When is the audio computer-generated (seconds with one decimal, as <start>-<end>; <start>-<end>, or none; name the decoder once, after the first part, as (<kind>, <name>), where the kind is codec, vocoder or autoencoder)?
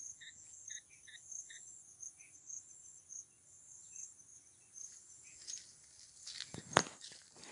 1.4-5.3 (vocoder, Vocos)